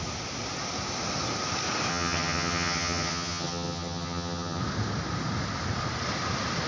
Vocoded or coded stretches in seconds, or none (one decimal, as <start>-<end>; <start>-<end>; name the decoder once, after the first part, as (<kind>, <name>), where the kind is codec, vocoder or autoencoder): 1.9-4.6 (vocoder, HiFi-GAN)